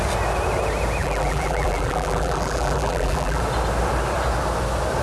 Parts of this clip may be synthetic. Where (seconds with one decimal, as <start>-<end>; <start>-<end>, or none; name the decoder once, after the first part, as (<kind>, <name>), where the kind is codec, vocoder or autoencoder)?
1.0-3.4 (vocoder, BigVGAN v2)